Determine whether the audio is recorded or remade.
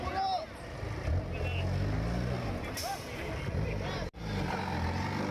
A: recorded